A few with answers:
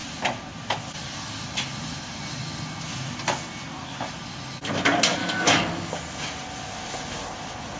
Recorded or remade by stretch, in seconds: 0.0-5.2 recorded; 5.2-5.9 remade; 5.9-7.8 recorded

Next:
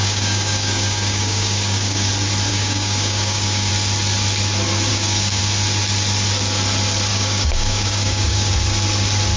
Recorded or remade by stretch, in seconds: 0.0-2.1 remade; 2.1-2.5 recorded; 2.5-3.7 remade; 3.7-4.9 recorded; 4.9-5.4 remade; 5.4-7.1 recorded; 7.1-8.5 remade; 8.5-9.4 recorded

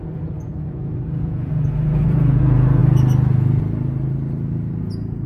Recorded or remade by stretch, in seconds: 0.0-2.8 remade; 2.8-4.8 recorded; 4.8-5.3 remade

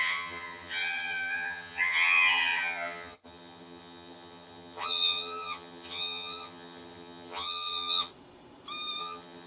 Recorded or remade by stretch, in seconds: 0.0-8.1 remade; 8.1-9.0 recorded; 9.0-9.5 remade

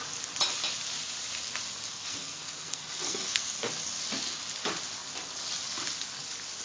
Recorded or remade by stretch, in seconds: 0.0-1.9 recorded; 1.9-3.7 remade; 3.7-6.6 recorded